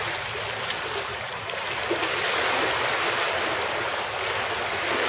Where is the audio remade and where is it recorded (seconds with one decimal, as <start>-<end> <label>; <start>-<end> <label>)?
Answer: 0.0-5.1 recorded